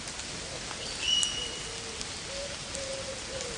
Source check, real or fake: real